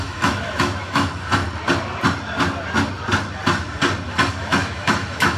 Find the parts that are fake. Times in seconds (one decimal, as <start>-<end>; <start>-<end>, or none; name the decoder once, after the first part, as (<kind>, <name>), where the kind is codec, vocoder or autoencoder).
0.0-1.1 (autoencoder, DAC-VAE); 4.3-5.4